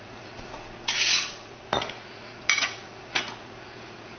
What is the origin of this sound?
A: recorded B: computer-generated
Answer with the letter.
B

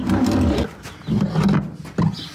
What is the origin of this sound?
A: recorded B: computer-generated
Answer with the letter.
A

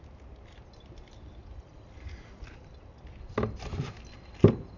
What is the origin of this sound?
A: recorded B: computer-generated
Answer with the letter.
A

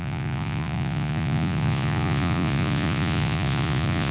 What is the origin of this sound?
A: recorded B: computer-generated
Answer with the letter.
B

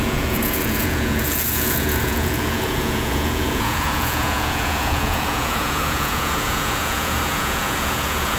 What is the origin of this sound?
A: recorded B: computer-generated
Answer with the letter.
B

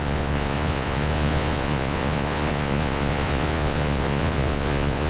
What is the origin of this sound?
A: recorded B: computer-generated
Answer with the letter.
B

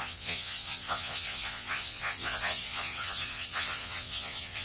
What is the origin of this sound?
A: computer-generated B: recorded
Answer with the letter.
A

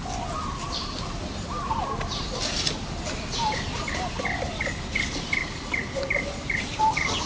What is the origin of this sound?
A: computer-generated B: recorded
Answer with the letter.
B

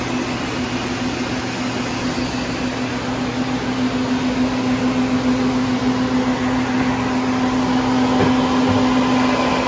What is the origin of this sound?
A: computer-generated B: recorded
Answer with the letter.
B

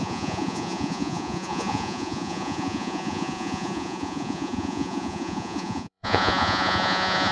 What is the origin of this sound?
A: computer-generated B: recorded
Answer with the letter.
A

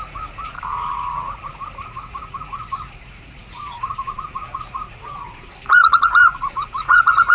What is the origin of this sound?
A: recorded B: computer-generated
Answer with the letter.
B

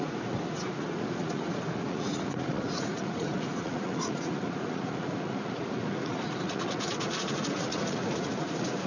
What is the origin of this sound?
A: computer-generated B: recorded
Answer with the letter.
A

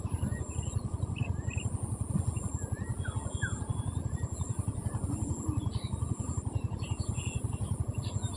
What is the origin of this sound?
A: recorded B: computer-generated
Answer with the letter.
A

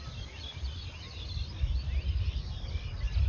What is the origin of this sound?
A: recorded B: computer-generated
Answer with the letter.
A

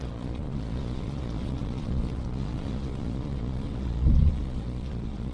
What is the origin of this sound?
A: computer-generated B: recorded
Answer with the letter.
A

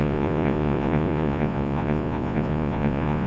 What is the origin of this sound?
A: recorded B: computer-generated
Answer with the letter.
B